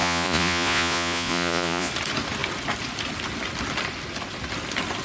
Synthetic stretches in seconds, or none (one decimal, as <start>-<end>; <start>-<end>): 0.0-1.9